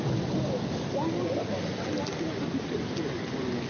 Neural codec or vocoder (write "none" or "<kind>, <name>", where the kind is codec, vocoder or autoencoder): none